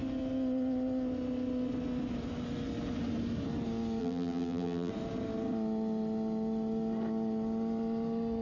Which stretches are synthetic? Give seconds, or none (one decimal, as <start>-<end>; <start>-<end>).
4.0-4.9

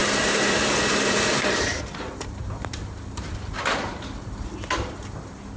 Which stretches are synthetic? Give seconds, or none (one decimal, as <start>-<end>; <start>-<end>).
0.0-3.0

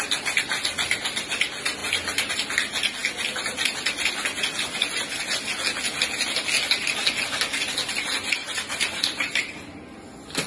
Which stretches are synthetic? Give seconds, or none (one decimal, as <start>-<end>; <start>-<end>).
1.8-2.3; 8.4-9.4

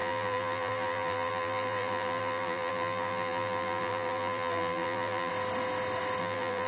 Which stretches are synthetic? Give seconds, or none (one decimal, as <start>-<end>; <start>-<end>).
0.0-5.3; 6.2-6.7